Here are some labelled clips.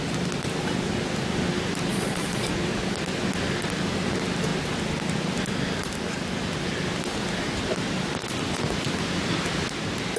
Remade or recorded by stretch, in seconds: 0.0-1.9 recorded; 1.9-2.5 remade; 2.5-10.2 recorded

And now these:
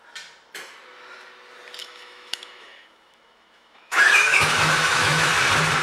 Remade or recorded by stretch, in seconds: 0.0-1.8 recorded; 1.8-5.3 remade; 5.3-5.8 recorded

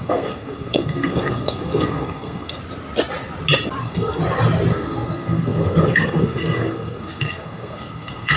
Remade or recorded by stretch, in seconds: 0.0-2.6 remade; 2.6-3.8 recorded; 3.8-4.2 remade; 4.2-4.7 recorded; 4.7-8.4 remade